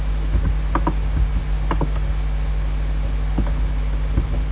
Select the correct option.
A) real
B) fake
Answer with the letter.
A